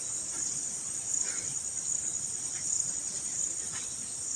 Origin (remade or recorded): recorded